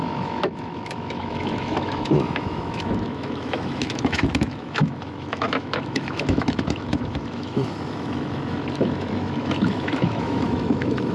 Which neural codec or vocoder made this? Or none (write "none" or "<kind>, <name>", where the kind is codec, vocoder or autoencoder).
autoencoder, DAC-VAE